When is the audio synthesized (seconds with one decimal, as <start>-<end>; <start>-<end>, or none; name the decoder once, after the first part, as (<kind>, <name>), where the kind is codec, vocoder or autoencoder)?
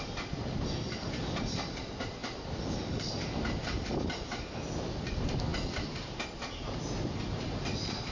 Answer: none